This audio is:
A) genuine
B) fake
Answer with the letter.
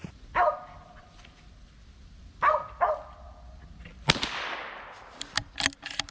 A